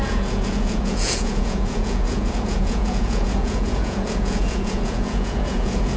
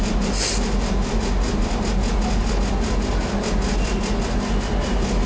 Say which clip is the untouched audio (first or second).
second